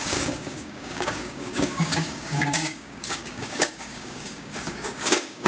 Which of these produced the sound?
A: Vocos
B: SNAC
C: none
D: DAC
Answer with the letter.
D